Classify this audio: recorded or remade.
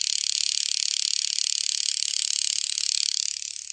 recorded